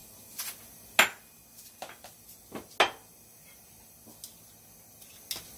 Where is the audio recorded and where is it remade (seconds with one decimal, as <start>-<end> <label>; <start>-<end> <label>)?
0.0-5.6 recorded